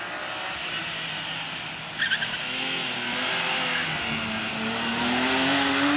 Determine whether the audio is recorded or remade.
recorded